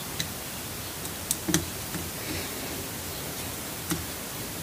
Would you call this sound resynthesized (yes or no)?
yes